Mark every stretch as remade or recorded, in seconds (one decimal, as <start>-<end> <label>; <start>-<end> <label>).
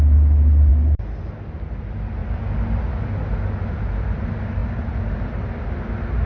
0.0-6.3 recorded